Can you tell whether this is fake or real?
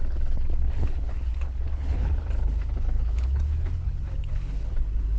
fake